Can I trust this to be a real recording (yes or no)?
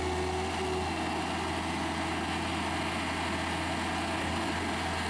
yes